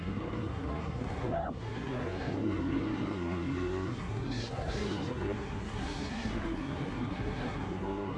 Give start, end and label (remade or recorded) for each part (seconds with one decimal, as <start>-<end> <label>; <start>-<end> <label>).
0.0-8.2 remade